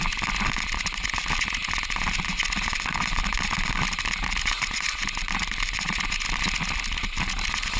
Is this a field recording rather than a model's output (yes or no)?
yes